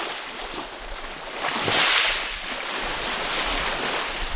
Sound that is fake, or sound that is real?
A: real